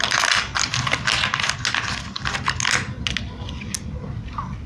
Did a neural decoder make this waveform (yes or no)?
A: no